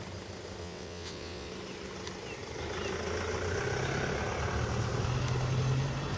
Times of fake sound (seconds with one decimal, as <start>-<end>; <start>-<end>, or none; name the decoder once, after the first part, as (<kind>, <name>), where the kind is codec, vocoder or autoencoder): 0.6-1.5 (vocoder, WaveNeXt)